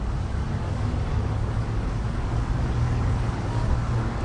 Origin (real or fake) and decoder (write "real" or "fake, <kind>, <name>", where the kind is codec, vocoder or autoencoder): fake, codec, DAC